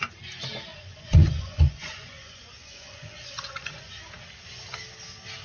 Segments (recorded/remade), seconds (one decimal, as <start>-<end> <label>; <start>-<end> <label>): 0.0-0.7 recorded; 0.7-3.9 remade; 3.9-5.4 recorded